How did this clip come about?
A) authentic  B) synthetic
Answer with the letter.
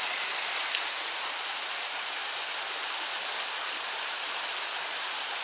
A